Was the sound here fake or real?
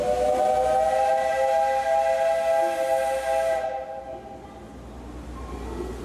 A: real